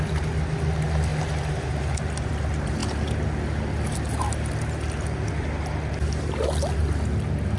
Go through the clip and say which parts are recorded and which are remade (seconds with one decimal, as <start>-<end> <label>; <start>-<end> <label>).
0.0-7.6 recorded